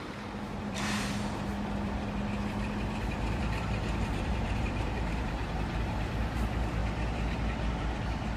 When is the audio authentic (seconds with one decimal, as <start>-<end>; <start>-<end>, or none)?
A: 1.5-4.1; 6.8-8.4

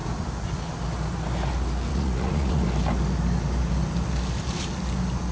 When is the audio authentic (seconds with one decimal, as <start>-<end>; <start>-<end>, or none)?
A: 0.0-1.9; 2.6-5.3

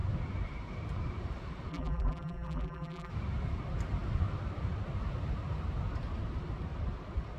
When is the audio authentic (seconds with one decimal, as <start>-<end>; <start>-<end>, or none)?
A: 0.0-1.7; 3.1-7.4

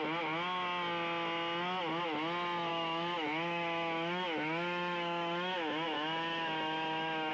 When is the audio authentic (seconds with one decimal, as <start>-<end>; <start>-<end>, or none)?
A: 0.0-2.7

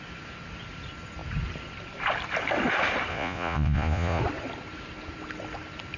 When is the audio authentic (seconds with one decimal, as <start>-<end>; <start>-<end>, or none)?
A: 0.0-3.1; 4.2-6.0

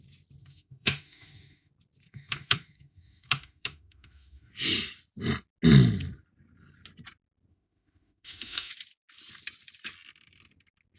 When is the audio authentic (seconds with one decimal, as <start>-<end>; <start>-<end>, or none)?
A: 0.0-0.4; 1.7-2.1; 4.5-7.5; 8.7-11.0